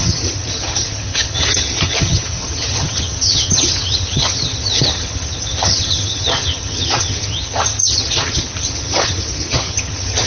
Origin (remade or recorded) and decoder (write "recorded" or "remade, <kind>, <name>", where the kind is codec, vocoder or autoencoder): remade, vocoder, HiFi-GAN